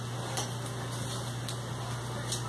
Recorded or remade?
recorded